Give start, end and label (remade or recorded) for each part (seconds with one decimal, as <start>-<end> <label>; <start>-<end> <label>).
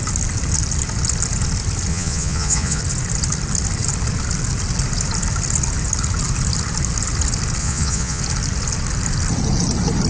0.0-1.9 recorded; 1.9-2.8 remade; 2.8-7.6 recorded; 7.6-8.2 remade; 8.2-10.1 recorded